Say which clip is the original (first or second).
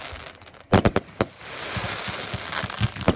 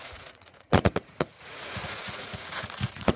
first